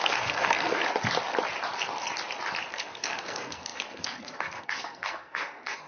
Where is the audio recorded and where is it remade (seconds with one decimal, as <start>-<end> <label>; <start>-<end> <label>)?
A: 0.0-0.8 remade; 0.8-2.7 recorded; 2.7-5.9 remade